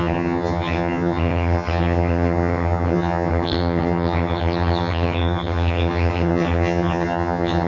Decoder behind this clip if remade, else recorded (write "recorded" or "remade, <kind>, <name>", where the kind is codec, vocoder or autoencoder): remade, vocoder, HiFi-GAN